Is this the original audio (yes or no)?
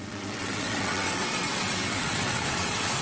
no